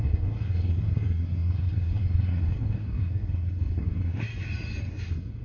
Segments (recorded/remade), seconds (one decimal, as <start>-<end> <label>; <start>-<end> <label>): 0.0-4.3 remade; 4.3-4.9 recorded; 4.9-5.4 remade